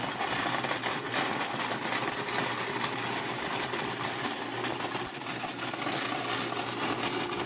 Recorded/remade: recorded